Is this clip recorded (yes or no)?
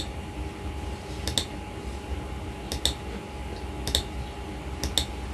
yes